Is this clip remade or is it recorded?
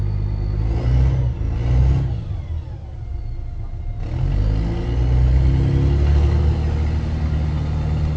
recorded